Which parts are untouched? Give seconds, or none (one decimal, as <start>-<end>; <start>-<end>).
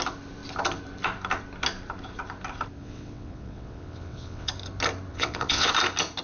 0.0-2.8; 4.5-5.1; 5.7-6.2